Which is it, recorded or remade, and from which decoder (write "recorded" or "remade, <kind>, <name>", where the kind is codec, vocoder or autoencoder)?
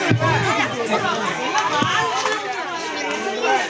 recorded